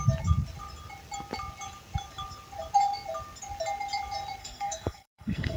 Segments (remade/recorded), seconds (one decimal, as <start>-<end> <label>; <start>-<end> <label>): 0.0-4.4 recorded; 4.4-5.6 remade